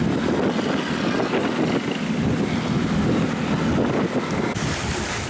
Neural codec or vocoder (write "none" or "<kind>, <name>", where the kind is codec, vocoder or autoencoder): none